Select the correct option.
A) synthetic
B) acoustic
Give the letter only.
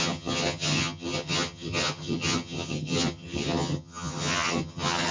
A